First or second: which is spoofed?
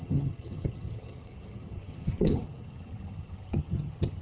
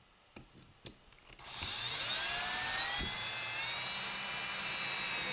first